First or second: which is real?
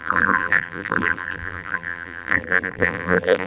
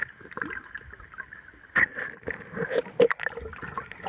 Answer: second